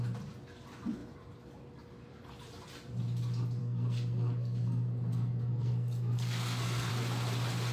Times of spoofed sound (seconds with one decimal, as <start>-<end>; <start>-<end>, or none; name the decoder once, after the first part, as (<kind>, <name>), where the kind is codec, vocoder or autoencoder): 3.6-6.9 (codec, SNAC)